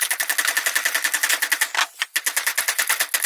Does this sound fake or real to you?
real